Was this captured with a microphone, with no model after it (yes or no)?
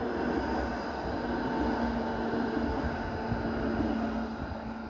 yes